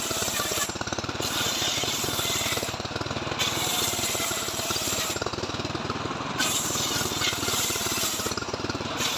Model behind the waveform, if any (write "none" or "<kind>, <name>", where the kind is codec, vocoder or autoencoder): vocoder, BigVGAN v2